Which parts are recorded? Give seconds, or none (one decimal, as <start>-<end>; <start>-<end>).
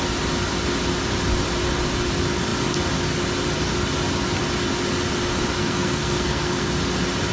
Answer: 0.0-5.6; 6.7-7.3